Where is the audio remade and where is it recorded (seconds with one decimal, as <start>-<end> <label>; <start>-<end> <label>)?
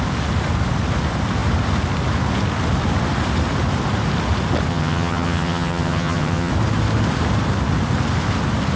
0.0-4.7 recorded; 4.7-6.5 remade; 6.5-8.8 recorded